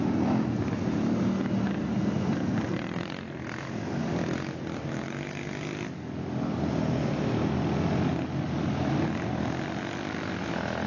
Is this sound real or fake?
real